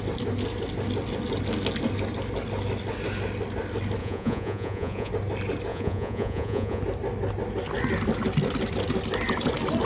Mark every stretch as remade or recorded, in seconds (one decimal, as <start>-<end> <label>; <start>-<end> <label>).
0.0-4.0 recorded; 4.0-5.1 remade; 5.1-5.7 recorded; 5.7-6.8 remade; 6.8-9.9 recorded